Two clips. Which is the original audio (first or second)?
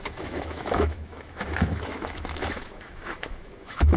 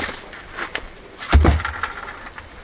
second